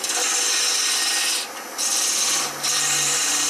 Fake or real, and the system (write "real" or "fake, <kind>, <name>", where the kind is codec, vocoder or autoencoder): real